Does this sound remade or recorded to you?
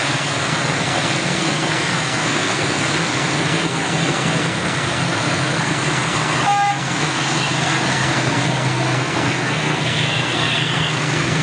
remade